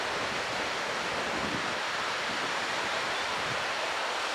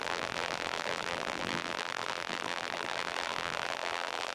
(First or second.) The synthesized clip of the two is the second